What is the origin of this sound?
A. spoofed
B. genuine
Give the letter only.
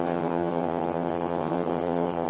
A